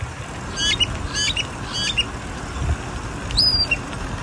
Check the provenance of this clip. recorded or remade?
recorded